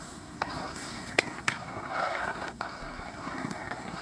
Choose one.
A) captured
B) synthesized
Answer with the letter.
B